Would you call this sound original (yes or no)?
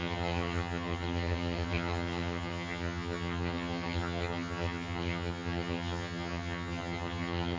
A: no